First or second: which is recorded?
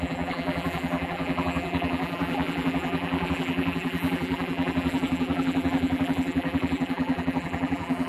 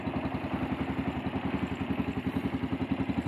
second